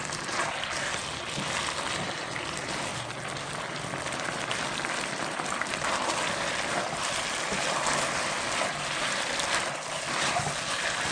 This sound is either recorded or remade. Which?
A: recorded